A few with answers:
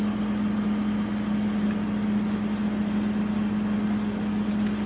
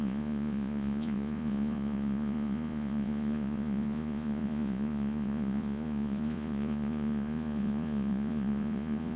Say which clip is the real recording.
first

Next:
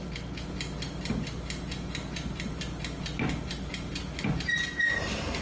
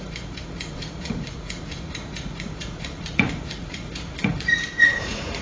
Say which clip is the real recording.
first